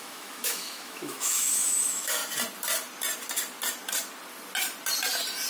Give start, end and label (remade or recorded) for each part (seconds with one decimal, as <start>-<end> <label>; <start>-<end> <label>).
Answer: 0.0-2.2 remade; 2.2-5.5 recorded